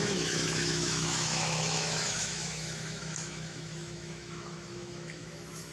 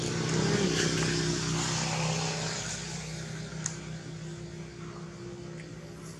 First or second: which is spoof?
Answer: first